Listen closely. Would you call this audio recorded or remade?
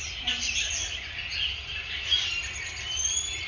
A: recorded